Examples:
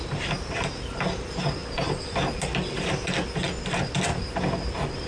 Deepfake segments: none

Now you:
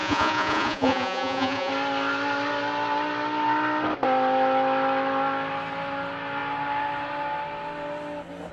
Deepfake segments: 0.0-1.7 (vocoder, Vocos)

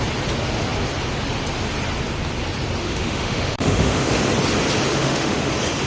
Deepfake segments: 2.8-4.2 (autoencoder, DAC-VAE); 4.9-5.5

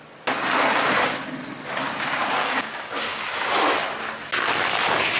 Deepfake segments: 2.4-3.2 (codec, DAC)

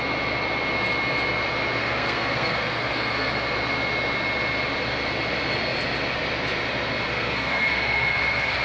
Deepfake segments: 1.8-3.3 (codec, SNAC); 7.1-8.6